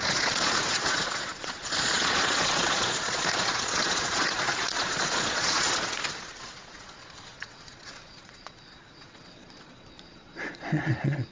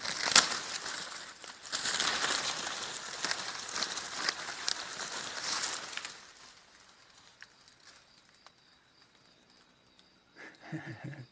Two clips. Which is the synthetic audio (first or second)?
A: first